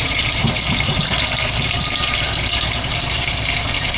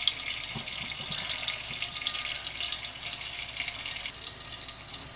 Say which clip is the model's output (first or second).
first